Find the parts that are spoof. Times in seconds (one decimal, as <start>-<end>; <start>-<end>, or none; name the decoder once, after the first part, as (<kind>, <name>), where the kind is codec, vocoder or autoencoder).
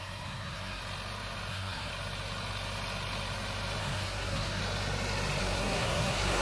0.0-0.8 (codec, SNAC); 1.5-1.9; 3.8-4.6; 5.4-6.4